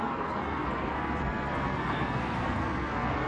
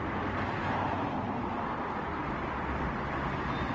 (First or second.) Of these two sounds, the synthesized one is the first